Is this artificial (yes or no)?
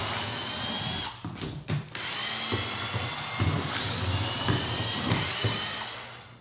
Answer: no